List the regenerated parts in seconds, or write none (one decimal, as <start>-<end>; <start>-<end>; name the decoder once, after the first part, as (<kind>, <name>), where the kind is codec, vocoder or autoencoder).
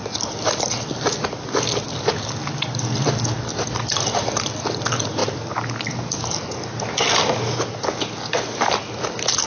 none